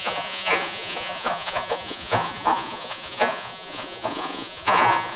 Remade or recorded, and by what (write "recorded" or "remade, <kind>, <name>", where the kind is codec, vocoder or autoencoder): remade, vocoder, Vocos